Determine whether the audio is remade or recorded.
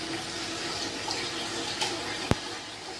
recorded